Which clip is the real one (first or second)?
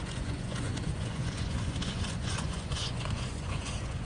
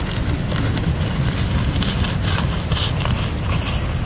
second